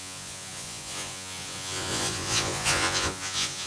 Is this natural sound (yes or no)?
no